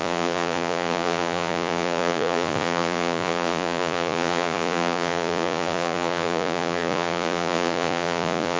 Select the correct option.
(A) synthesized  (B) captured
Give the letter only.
A